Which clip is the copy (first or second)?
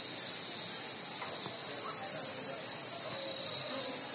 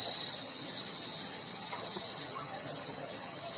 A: second